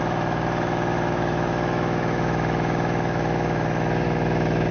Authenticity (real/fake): fake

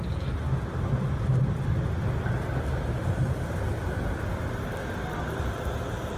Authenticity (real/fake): real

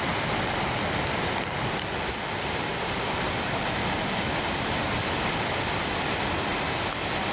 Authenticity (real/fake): real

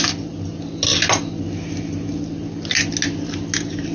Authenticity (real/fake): real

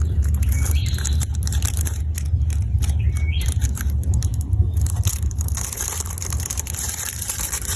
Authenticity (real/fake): fake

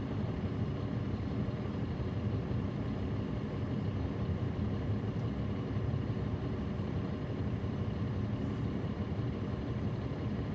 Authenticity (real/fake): fake